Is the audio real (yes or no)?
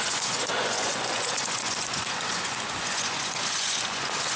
no